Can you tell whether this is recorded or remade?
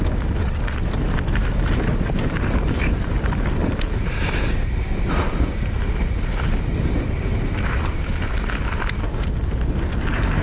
recorded